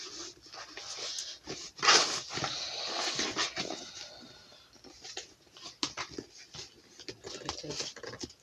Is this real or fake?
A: real